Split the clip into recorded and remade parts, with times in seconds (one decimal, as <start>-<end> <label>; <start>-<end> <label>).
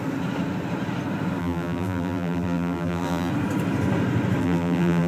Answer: 0.0-1.4 recorded; 1.4-3.3 remade; 3.3-4.4 recorded; 4.4-5.1 remade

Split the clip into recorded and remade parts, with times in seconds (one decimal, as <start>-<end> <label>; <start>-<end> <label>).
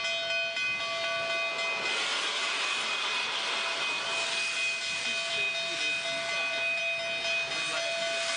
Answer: 0.0-8.4 recorded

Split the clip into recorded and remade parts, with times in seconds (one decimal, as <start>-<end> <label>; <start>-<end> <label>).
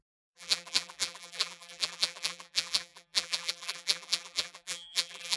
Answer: 0.0-5.4 remade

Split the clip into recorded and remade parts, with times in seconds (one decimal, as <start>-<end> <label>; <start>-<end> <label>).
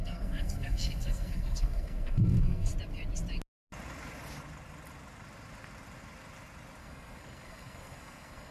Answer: 0.0-2.7 remade; 2.7-6.8 recorded; 6.8-8.5 remade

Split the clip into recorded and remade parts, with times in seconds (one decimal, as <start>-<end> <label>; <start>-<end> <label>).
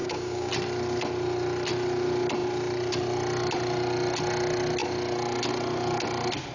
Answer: 0.0-0.5 remade; 0.5-6.5 recorded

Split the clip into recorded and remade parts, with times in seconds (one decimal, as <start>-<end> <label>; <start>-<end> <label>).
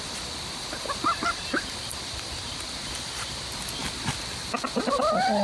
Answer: 0.0-5.4 recorded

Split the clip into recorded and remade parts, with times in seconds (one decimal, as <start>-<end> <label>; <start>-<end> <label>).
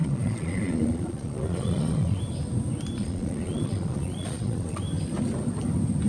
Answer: 0.0-2.2 remade; 2.2-3.0 recorded; 3.0-4.8 remade; 4.8-6.1 recorded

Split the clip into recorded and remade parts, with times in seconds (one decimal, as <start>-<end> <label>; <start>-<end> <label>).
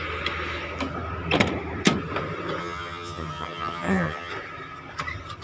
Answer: 0.0-2.6 recorded; 2.6-4.3 remade; 4.3-5.4 recorded